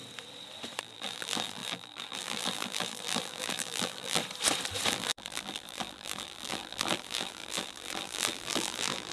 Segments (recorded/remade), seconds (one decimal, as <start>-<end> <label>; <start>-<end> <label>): 0.0-0.8 recorded; 0.8-4.2 remade; 4.2-4.9 recorded; 4.9-9.1 remade